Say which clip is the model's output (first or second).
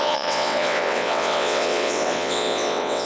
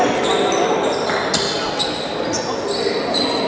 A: first